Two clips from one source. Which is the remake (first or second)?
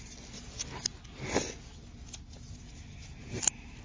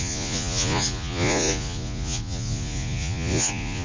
second